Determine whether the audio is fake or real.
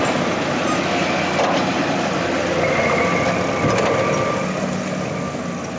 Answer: real